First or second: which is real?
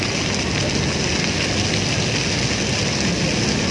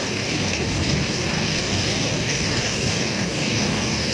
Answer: first